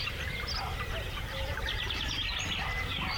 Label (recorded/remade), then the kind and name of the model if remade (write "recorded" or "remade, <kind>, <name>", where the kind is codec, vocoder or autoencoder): recorded